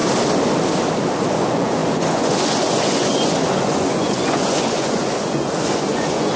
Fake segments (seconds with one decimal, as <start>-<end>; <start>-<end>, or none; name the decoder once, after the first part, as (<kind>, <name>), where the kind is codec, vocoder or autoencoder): 1.2-6.4 (vocoder, Vocos)